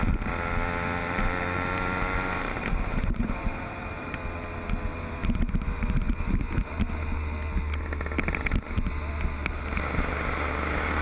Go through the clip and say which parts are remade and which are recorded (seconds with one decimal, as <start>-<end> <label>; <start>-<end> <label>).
0.0-1.0 recorded; 1.0-4.2 remade; 4.2-11.0 recorded